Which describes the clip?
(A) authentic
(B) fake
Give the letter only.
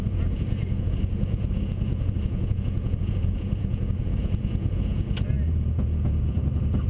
B